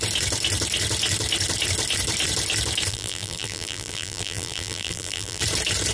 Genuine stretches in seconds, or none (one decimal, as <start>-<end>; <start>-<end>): 0.0-2.9; 5.4-5.9